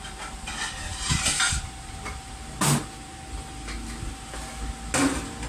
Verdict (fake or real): real